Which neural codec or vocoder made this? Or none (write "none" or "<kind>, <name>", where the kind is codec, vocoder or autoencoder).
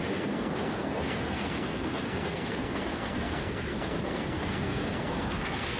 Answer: codec, SNAC